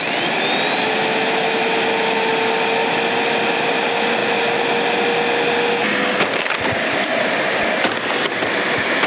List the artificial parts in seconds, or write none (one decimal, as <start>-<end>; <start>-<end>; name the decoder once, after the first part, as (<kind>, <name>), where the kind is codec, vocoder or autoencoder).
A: none